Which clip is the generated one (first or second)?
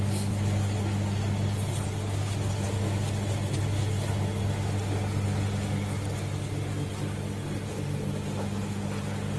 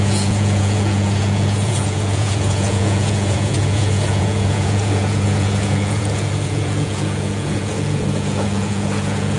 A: second